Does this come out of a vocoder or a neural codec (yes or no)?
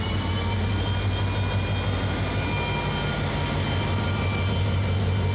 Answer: no